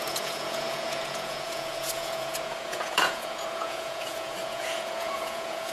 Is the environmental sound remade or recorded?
remade